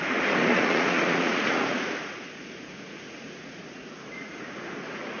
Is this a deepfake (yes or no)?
yes